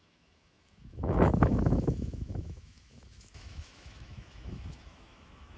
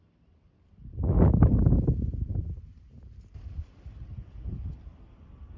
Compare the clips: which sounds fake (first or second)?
first